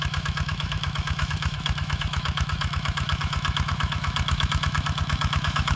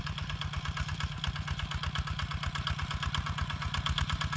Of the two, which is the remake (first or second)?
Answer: first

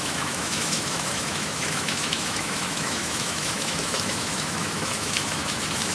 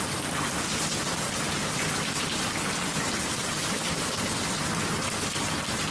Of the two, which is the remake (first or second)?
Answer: first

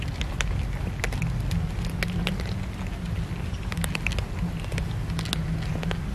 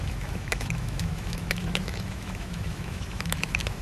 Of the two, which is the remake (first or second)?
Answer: second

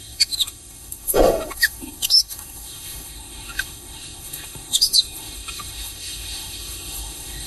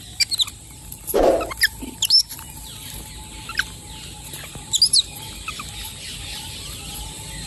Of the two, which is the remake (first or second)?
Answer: first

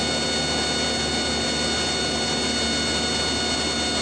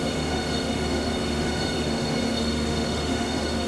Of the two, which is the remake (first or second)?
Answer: second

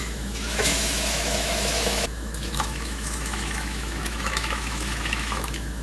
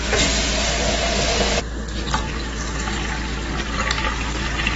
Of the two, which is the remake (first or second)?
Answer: first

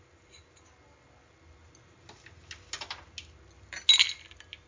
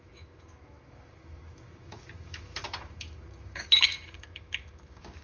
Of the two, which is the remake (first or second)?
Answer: second